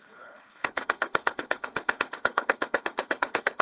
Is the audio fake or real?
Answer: fake